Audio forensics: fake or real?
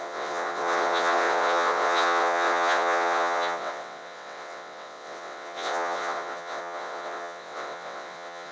fake